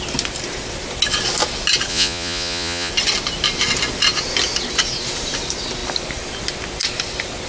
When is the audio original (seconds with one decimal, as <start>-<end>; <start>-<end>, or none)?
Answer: 0.0-1.9; 2.9-7.5